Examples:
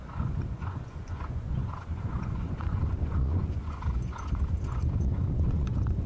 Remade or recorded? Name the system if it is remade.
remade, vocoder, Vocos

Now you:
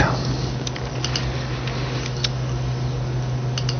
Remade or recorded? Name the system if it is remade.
recorded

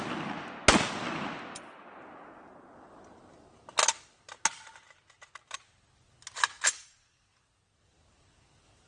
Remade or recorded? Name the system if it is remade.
recorded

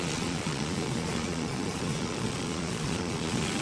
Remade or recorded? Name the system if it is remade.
remade, vocoder, Vocos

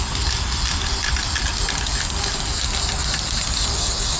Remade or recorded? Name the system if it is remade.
recorded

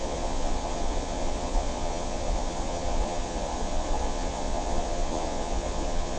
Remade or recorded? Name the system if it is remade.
remade, vocoder, Vocos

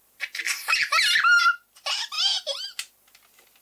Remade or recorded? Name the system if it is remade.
recorded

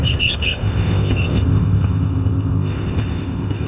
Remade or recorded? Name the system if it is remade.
remade, codec, ZipCodec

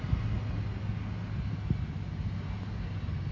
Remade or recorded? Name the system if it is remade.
recorded